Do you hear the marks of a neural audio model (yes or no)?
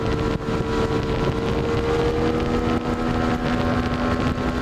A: no